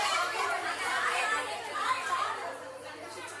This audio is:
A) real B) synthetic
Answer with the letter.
B